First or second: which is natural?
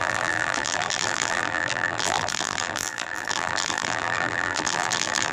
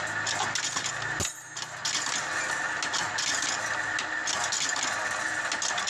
second